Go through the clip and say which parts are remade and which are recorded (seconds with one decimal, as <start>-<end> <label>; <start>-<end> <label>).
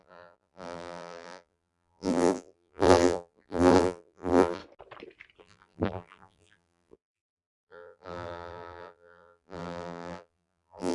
0.0-4.6 remade; 4.6-5.4 recorded; 5.4-10.9 remade